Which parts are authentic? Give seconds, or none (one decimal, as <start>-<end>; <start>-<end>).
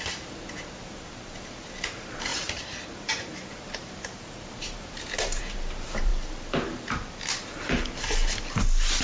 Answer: 6.1-9.0